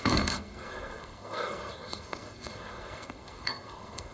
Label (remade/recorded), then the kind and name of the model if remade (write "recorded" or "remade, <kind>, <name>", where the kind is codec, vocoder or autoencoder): remade, codec, SNAC